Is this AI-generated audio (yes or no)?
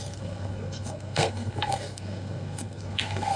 yes